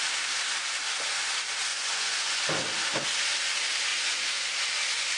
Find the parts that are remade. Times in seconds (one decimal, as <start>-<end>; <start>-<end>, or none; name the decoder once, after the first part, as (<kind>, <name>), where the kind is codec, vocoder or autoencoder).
1.7-2.4 (vocoder, Vocos); 3.9-4.5